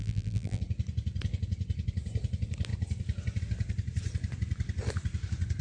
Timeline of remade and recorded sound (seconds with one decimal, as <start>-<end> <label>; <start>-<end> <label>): 0.0-0.6 remade; 0.6-5.6 recorded